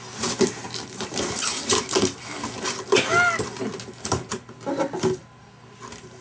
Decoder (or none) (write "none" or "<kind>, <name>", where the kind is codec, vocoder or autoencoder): none